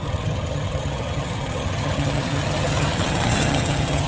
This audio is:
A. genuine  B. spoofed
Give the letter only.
B